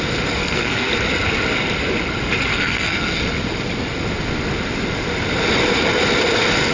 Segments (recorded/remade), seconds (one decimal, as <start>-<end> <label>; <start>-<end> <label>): 0.0-0.4 recorded; 0.4-0.9 remade; 0.9-2.5 recorded; 2.5-3.2 remade; 3.2-6.7 recorded